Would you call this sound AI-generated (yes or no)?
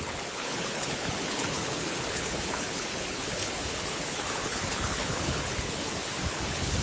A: yes